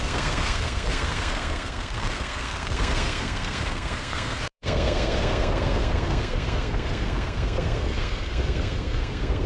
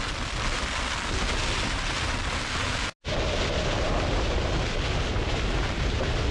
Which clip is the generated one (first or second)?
first